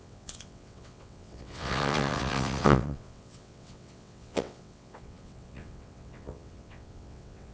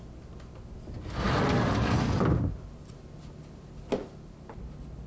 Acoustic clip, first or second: second